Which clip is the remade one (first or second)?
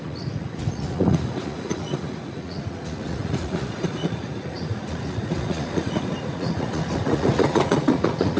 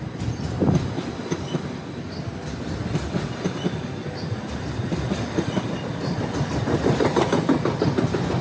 first